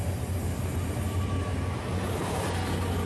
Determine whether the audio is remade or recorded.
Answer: recorded